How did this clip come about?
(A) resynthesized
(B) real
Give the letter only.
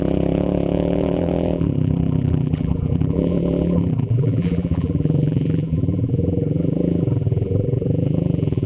A